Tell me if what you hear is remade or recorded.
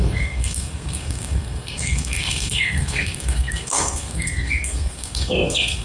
remade